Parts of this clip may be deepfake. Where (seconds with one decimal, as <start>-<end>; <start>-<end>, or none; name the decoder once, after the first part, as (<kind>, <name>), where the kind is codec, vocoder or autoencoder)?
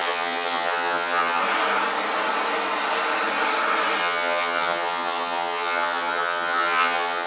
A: 0.0-1.4 (vocoder, HiFi-GAN); 4.0-7.3